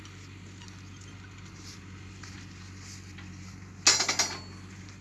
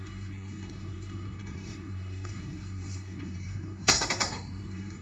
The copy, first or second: second